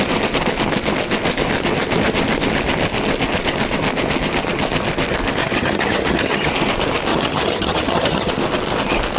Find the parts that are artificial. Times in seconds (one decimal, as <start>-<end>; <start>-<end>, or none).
5.4-6.5; 7.1-8.3